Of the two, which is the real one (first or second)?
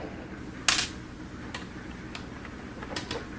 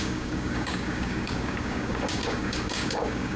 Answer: first